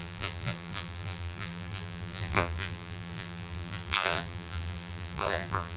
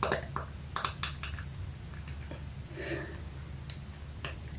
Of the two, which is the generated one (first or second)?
first